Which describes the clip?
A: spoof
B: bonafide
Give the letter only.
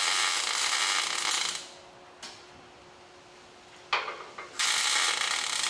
B